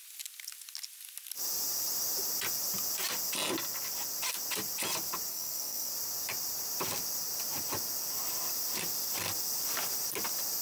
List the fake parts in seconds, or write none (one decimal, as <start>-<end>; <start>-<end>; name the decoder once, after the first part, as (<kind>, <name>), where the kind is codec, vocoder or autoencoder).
5.3-5.9 (codec, SNAC)